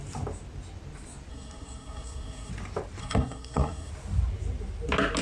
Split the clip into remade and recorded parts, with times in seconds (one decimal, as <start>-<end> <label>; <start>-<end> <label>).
0.0-1.3 recorded; 1.3-2.5 remade; 2.5-3.0 recorded; 3.0-3.9 remade; 3.9-5.2 recorded